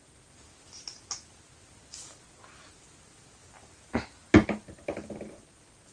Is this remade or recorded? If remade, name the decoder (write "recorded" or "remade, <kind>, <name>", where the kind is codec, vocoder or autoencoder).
recorded